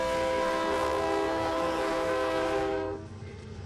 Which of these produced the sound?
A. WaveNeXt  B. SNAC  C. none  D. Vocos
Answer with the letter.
B